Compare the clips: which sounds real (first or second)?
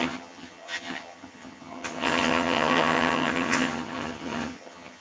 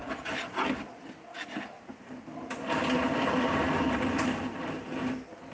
second